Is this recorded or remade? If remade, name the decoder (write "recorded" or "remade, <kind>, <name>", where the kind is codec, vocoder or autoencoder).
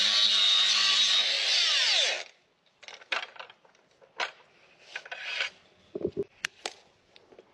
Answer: recorded